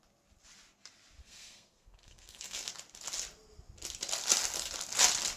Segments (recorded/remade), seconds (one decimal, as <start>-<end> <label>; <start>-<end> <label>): 0.0-1.2 recorded; 1.2-2.7 remade; 2.7-5.4 recorded